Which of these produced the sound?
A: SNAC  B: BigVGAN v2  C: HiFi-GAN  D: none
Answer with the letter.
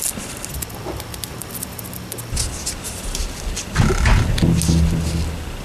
D